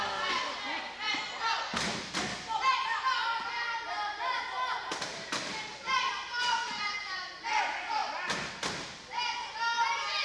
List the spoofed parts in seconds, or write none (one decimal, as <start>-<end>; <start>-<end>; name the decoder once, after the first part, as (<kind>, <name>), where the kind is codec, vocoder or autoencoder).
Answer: 5.1-6.8 (vocoder, BigVGAN v2); 8.0-8.5